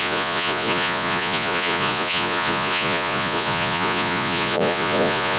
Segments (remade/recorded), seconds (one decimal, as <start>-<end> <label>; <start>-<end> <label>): 0.0-5.4 remade